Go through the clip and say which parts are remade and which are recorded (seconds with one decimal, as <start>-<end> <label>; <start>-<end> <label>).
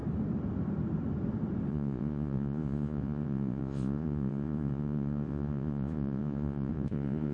0.0-1.7 recorded; 1.7-7.3 remade